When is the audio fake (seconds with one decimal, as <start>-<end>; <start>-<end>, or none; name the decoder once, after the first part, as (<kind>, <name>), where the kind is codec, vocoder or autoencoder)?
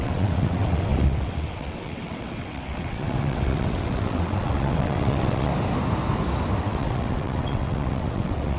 0.0-5.5 (vocoder, WaveNeXt); 6.6-8.6